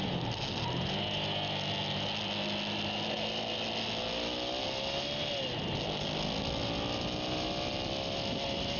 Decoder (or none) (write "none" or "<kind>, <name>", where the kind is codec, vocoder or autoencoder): none